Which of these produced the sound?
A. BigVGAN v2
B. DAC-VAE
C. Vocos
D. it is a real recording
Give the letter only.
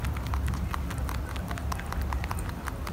D